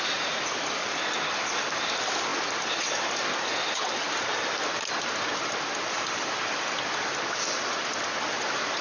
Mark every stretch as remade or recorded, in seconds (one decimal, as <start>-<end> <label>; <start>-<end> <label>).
0.0-8.8 recorded